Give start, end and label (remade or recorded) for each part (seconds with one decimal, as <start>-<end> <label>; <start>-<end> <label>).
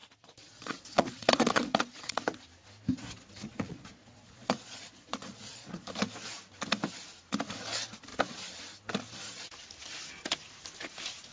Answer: 0.0-2.2 remade; 2.2-3.5 recorded; 3.5-5.9 remade; 5.9-11.3 recorded